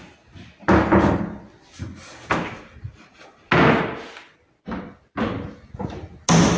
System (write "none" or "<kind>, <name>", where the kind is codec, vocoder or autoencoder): none